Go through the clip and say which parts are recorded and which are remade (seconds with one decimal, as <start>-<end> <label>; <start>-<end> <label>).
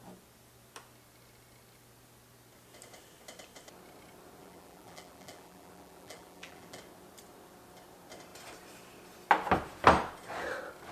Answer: 0.0-4.4 recorded; 4.4-6.8 remade; 6.8-10.9 recorded